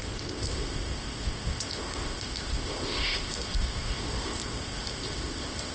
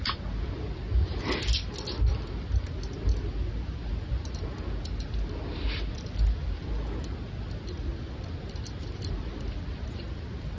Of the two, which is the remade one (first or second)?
first